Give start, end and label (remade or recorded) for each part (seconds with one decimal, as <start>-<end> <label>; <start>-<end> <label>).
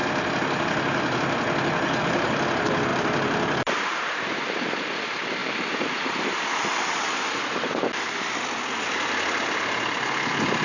0.0-2.9 recorded; 2.9-4.4 remade; 4.4-5.4 recorded; 5.4-6.4 remade; 6.4-10.6 recorded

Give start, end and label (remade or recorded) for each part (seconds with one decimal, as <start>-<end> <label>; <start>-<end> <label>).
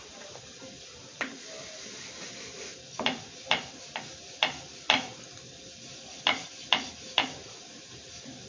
0.0-8.5 remade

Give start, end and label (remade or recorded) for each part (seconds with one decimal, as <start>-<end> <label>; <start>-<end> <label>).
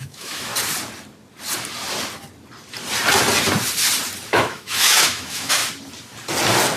0.0-0.5 remade; 0.5-4.3 recorded; 4.3-5.6 remade; 5.6-6.8 recorded